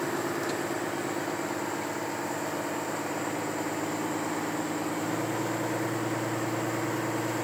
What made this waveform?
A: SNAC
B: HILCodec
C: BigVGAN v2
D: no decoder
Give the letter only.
D